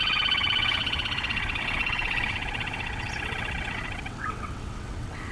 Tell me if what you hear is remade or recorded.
remade